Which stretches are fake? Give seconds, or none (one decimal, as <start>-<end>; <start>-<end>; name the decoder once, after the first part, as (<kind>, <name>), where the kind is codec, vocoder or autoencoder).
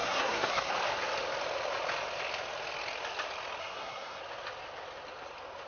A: 0.0-0.7 (codec, SNAC); 3.6-4.2